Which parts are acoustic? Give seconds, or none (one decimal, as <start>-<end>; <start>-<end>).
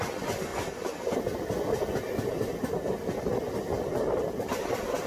0.0-5.1